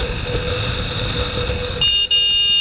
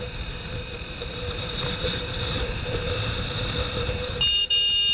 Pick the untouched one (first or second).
first